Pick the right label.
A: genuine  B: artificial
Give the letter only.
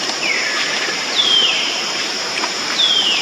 B